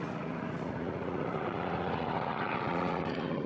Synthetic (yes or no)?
yes